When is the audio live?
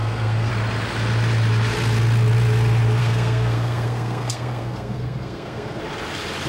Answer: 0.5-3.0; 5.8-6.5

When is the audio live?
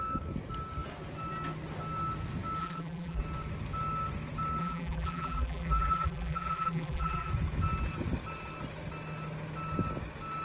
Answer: 0.0-2.6; 3.2-4.6; 7.3-10.4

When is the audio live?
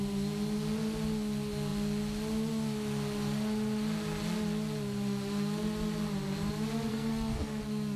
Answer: 0.0-6.9; 7.6-8.0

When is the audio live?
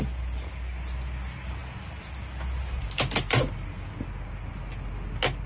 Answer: 0.0-5.5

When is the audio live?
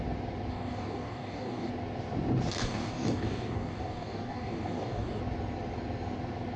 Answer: 0.0-0.5; 1.7-2.6; 5.2-6.6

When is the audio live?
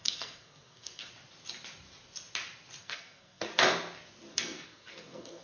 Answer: 1.1-2.8; 3.5-4.3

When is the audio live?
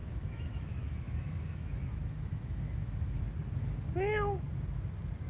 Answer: 3.2-5.3